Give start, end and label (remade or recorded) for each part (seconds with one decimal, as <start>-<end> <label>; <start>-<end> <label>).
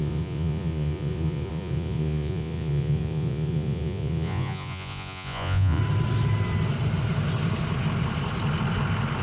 0.0-5.8 remade; 5.8-9.2 recorded